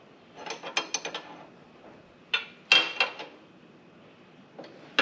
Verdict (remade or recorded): recorded